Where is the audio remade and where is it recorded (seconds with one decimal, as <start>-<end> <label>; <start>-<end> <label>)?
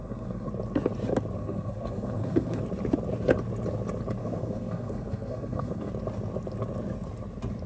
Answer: 0.0-0.5 remade; 0.5-1.4 recorded; 1.4-2.6 remade; 2.6-4.2 recorded; 4.2-5.9 remade; 5.9-7.7 recorded